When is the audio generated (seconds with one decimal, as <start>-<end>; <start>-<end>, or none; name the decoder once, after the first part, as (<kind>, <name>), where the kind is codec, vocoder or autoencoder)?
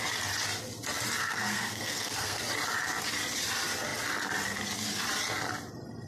1.2-2.4 (codec, SNAC)